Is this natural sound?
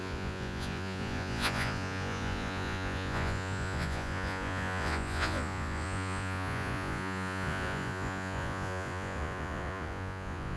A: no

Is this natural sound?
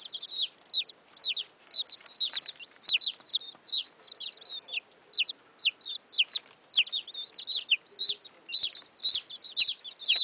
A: yes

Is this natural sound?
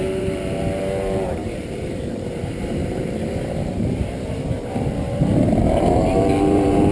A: no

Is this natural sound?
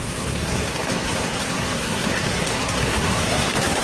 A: no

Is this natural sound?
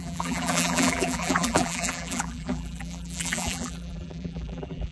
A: no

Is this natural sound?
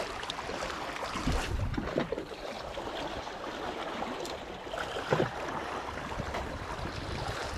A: no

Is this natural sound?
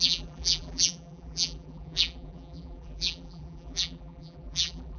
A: no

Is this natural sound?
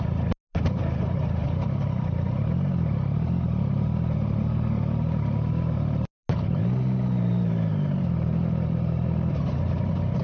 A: yes